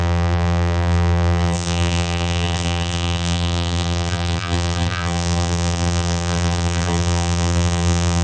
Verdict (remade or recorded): remade